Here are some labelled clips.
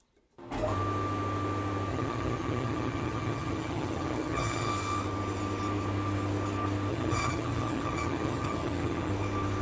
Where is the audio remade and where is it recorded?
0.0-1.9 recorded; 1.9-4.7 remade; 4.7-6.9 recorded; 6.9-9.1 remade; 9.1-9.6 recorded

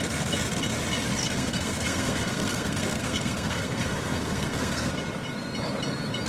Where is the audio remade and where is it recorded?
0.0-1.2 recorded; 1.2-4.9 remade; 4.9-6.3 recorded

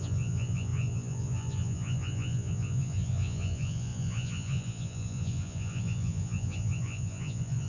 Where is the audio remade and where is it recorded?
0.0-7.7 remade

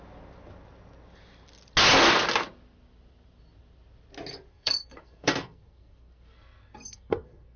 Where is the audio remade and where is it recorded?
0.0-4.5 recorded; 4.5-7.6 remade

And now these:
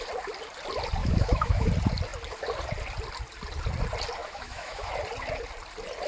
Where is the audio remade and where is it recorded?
0.0-1.0 recorded; 1.0-1.7 remade; 1.7-4.2 recorded; 4.2-4.9 remade; 4.9-6.1 recorded

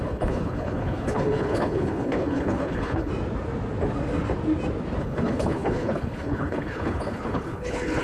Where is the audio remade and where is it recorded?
0.0-3.1 remade; 3.1-5.0 recorded; 5.0-8.0 remade